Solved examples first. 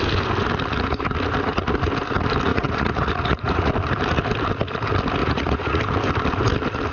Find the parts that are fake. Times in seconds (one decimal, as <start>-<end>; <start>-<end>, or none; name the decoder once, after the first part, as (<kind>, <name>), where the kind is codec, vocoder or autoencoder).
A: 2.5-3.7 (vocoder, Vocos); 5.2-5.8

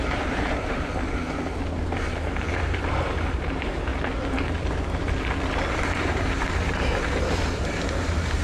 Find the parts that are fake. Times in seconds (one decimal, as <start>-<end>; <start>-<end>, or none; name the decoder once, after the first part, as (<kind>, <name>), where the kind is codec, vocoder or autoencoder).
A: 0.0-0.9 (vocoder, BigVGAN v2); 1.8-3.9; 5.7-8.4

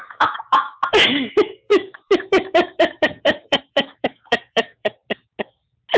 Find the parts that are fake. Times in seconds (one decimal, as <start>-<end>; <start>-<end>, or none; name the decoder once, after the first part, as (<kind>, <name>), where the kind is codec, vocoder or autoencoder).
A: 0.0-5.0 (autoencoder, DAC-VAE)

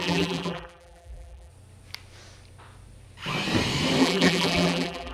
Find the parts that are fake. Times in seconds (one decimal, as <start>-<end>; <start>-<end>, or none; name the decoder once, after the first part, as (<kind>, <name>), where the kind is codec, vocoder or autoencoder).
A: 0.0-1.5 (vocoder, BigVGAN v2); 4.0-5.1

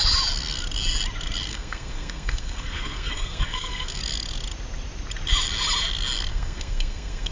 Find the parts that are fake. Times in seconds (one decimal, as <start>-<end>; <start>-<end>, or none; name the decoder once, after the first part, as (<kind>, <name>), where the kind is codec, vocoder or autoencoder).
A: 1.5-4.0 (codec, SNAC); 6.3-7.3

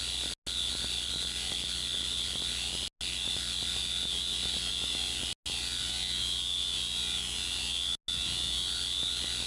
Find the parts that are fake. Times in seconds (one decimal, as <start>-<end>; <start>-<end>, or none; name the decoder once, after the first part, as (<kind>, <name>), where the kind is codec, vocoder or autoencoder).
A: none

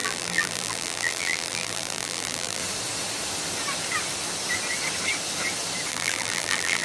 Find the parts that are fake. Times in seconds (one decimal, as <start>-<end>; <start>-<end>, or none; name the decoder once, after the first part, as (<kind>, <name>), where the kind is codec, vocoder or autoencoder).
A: 0.0-2.6 (vocoder, BigVGAN v2); 5.9-6.8